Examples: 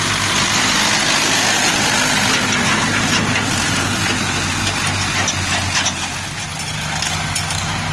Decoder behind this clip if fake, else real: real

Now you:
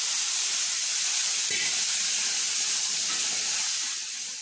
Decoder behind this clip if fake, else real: real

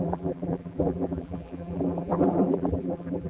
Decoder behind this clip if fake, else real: fake, vocoder, BigVGAN v2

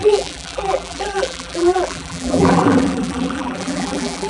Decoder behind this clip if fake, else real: fake, vocoder, BigVGAN v2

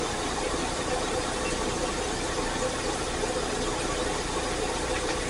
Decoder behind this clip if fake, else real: real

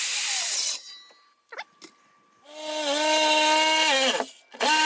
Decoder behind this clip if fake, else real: real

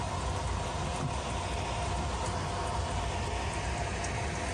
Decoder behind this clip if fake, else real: real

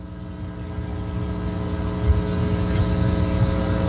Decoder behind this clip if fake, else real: real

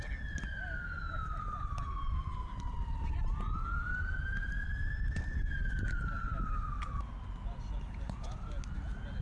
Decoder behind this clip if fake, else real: real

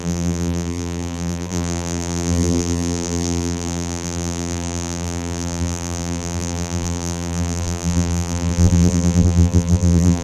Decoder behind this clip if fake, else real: fake, vocoder, BigVGAN v2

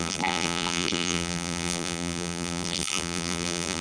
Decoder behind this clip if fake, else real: fake, vocoder, BigVGAN v2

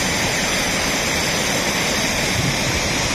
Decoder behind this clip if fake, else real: fake, vocoder, BigVGAN v2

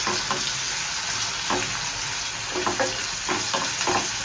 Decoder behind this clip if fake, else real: real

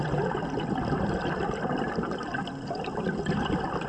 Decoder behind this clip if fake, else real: fake, vocoder, BigVGAN v2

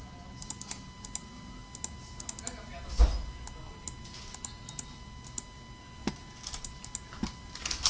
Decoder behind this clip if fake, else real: real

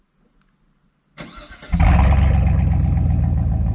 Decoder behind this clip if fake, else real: real